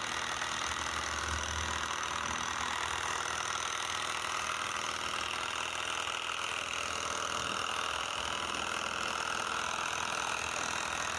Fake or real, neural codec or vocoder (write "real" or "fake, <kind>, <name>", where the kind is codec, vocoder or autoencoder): real